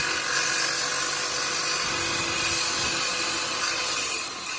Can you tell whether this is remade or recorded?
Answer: recorded